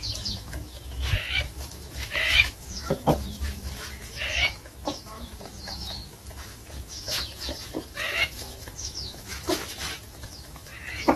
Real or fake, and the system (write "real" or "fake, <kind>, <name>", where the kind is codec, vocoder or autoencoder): fake, autoencoder, DAC-VAE